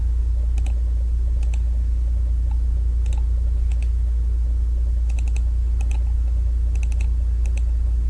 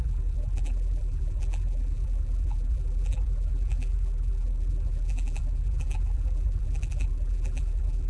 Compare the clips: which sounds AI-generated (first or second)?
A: second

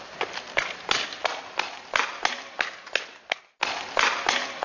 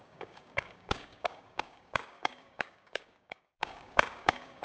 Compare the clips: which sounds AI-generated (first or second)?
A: second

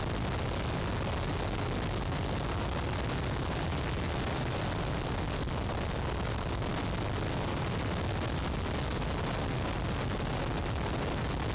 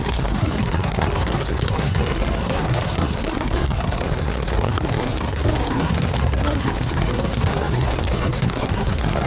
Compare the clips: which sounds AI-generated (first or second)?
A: second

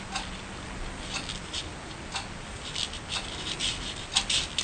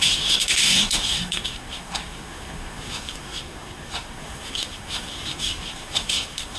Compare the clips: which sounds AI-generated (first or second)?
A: second